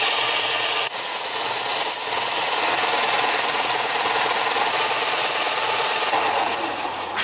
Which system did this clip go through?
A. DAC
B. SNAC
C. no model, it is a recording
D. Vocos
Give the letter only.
D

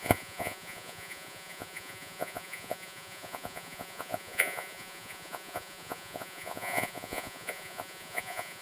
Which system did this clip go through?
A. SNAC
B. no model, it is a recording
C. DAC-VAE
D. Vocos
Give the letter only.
D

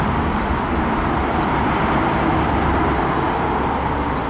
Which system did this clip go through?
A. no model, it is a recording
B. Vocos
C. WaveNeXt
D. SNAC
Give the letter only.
A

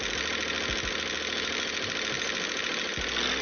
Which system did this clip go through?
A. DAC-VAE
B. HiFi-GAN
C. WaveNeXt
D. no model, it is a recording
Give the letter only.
D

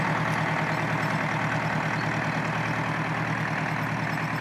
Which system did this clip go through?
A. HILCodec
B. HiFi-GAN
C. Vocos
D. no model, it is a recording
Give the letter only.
D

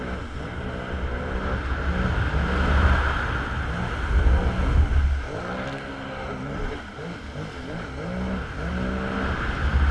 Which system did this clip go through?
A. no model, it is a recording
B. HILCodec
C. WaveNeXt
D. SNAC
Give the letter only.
A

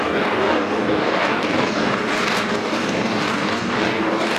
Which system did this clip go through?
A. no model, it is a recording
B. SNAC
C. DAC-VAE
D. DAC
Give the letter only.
D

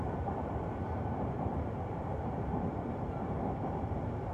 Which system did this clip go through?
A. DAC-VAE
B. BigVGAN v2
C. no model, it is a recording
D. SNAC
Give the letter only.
B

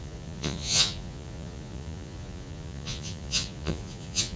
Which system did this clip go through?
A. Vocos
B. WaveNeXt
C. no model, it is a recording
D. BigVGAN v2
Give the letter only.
A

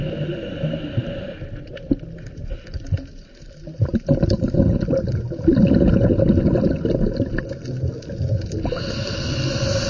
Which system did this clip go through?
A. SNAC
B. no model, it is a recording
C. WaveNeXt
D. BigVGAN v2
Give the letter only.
B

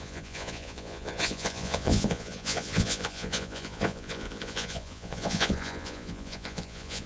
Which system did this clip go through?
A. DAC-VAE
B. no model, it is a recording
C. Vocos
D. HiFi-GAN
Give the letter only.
C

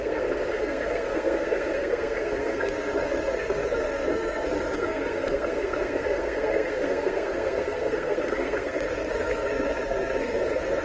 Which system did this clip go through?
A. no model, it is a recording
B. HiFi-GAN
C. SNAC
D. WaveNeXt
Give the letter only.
C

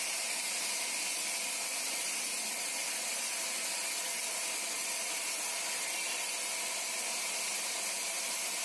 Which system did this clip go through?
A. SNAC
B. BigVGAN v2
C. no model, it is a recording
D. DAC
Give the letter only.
C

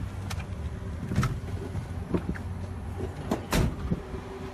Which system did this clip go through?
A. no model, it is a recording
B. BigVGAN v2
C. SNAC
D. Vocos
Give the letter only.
A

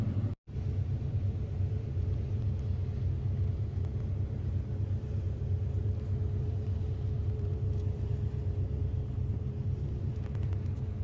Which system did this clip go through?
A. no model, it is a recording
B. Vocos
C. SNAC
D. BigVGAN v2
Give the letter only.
D